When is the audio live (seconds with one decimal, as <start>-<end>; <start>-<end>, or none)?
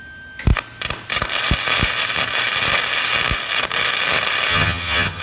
0.0-4.5